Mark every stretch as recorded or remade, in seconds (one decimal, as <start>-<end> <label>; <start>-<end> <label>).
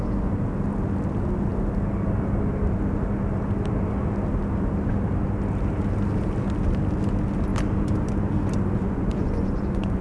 0.0-8.8 recorded; 8.8-10.0 remade